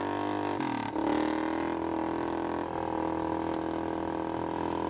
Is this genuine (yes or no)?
yes